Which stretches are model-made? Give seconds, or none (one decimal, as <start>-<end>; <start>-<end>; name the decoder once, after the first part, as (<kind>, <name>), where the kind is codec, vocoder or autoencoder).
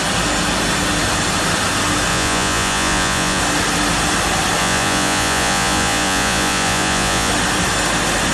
2.1-3.4 (vocoder, Vocos); 4.6-7.3